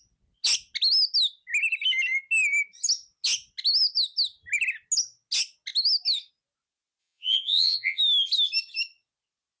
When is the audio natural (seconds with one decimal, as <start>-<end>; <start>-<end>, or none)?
0.0-7.0; 8.0-9.6